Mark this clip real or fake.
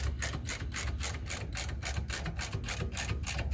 real